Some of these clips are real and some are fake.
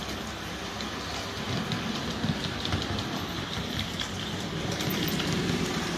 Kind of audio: real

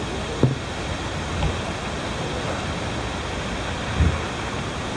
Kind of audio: real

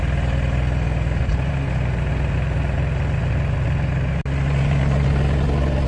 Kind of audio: real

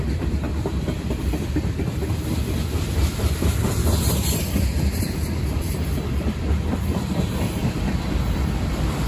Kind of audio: fake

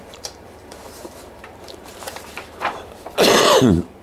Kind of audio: fake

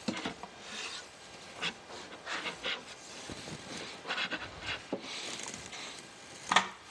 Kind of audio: real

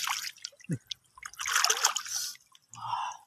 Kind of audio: real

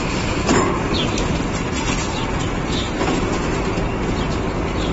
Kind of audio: real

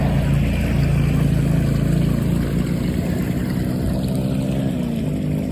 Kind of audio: real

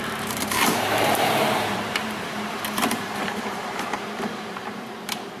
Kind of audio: fake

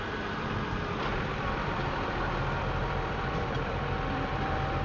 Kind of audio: fake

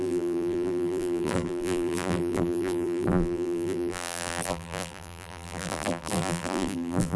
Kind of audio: fake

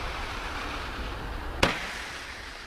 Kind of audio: real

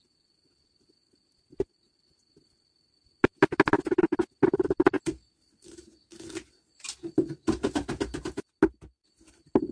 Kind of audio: real